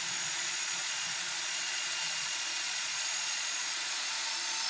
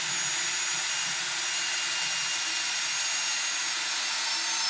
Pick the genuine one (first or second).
second